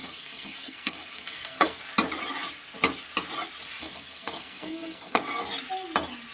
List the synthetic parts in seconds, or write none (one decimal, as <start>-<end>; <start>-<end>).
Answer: 0.0-1.8; 3.8-5.4